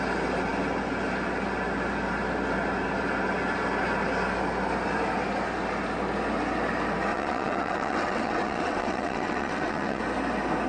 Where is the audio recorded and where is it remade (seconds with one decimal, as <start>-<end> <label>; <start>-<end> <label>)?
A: 0.0-7.1 recorded; 7.1-10.0 remade; 10.0-10.7 recorded